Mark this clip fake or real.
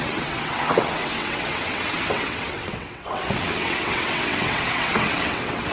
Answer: fake